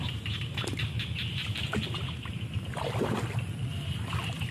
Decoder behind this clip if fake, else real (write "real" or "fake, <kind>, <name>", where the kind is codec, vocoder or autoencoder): real